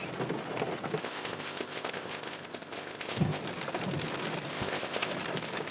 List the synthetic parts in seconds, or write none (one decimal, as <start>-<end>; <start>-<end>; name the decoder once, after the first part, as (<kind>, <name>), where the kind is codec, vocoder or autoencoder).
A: 1.0-3.4 (codec, ZipCodec); 4.5-5.1